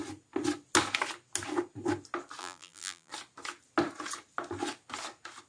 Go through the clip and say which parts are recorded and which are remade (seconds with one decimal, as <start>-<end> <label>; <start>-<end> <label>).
0.0-2.4 recorded; 2.4-3.1 remade; 3.1-5.5 recorded